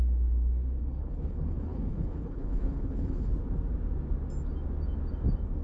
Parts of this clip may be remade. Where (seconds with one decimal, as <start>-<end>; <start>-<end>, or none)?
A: 0.8-3.3